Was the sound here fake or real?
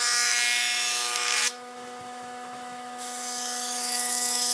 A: fake